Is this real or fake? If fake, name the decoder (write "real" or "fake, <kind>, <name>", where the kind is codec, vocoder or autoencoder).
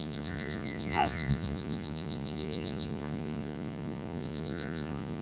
fake, vocoder, Vocos